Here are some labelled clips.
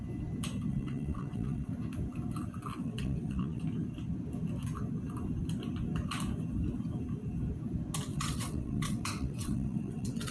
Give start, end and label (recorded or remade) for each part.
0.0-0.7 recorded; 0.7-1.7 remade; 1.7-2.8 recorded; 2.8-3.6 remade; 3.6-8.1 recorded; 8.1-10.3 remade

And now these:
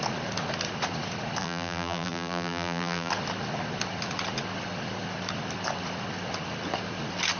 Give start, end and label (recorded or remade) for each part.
0.0-1.4 recorded; 1.4-3.1 remade; 3.1-7.4 recorded